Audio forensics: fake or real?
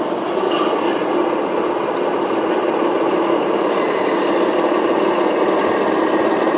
real